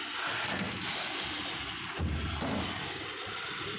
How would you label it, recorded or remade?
recorded